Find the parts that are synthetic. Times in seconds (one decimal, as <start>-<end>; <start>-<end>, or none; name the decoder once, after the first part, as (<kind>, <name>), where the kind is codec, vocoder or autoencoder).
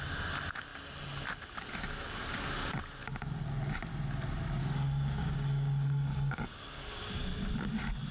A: 4.6-7.3 (codec, DAC)